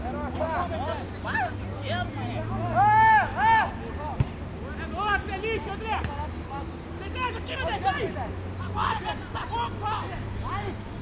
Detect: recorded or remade recorded